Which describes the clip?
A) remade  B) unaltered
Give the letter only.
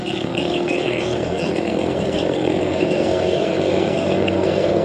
A